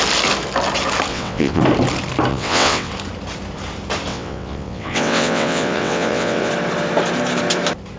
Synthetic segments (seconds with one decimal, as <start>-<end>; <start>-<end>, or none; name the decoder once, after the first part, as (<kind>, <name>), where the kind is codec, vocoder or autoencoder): 1.1-1.6 (vocoder, WaveNeXt); 2.3-2.9; 4.1-6.5